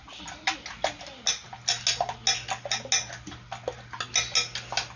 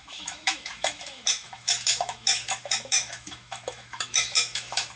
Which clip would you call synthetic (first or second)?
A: second